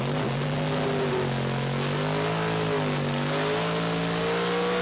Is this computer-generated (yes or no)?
no